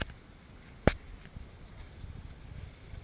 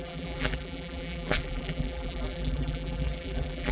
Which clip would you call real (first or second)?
first